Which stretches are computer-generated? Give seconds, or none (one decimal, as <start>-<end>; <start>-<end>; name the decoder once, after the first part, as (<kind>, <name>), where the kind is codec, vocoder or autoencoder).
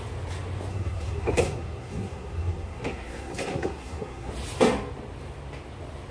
0.7-4.3 (codec, SNAC)